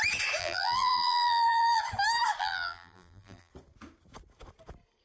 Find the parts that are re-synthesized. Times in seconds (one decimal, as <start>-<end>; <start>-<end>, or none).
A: 0.4-1.8; 2.4-3.5